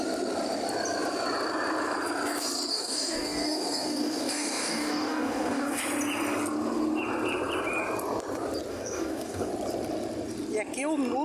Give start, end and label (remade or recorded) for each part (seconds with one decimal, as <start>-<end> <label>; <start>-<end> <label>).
0.0-2.7 recorded; 2.7-5.8 remade; 5.8-8.7 recorded; 8.7-9.5 remade; 9.5-11.2 recorded